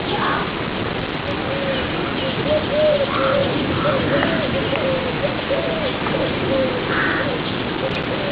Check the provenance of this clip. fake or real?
real